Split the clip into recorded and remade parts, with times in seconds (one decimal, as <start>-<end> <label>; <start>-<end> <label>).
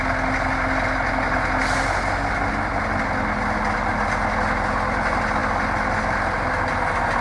0.0-7.2 recorded